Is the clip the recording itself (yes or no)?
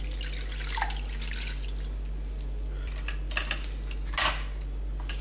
yes